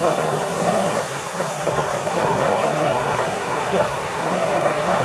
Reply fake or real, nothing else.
fake